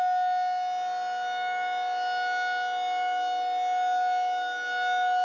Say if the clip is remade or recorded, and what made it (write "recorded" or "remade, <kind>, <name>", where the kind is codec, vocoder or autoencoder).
recorded